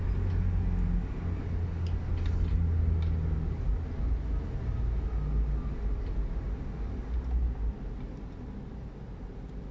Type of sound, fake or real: real